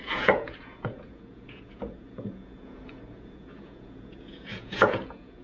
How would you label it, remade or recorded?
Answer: remade